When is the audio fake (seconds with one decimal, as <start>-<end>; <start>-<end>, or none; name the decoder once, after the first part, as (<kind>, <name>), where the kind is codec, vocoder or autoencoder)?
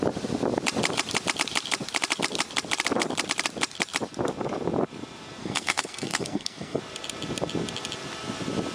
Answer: 5.4-6.8 (codec, SNAC)